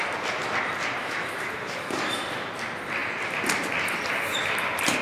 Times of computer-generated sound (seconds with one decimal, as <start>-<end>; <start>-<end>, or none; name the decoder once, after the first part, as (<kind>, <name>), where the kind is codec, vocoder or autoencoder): 1.0-2.2 (autoencoder, DAC-VAE)